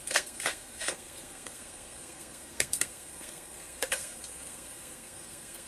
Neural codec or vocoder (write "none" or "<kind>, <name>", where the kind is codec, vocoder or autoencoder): codec, SNAC